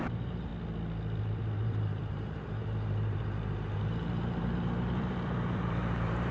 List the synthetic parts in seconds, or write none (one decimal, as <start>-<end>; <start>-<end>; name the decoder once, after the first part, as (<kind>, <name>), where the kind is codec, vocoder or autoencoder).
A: 0.0-0.5 (vocoder, BigVGAN v2); 1.2-6.3